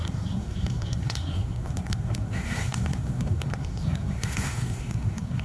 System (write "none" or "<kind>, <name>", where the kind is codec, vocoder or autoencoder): codec, SNAC